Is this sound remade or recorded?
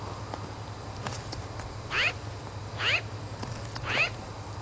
recorded